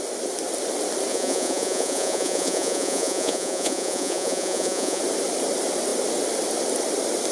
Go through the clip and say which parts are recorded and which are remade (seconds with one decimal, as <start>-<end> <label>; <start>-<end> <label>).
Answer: 0.0-1.1 recorded; 1.1-5.0 remade; 5.0-7.3 recorded